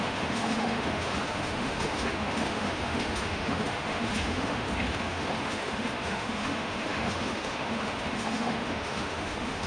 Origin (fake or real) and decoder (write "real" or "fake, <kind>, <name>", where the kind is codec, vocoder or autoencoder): fake, autoencoder, DAC-VAE